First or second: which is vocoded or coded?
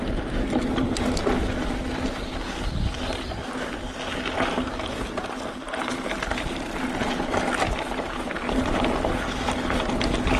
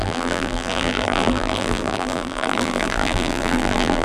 second